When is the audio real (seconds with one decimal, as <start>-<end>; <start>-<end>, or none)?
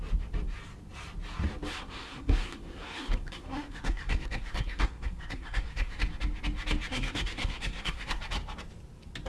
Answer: 0.0-1.7; 6.0-6.9; 8.2-9.3